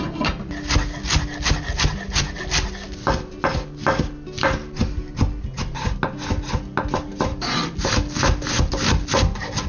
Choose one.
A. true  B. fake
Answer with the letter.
A